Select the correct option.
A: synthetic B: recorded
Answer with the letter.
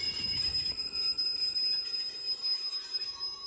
B